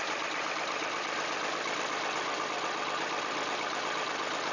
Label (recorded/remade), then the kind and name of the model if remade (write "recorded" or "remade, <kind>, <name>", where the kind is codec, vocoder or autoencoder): recorded